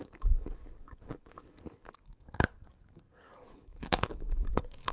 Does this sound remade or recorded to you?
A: remade